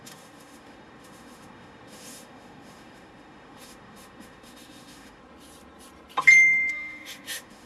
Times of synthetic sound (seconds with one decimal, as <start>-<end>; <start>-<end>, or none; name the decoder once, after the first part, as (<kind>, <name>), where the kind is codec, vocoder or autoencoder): 0.0-5.2 (autoencoder, DAC-VAE); 6.7-7.7